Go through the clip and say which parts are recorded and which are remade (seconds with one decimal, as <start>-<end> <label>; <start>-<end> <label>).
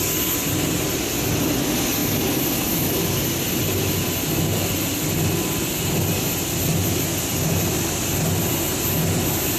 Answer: 0.0-9.6 recorded